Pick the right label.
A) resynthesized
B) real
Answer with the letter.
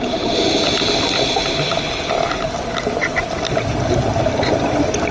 B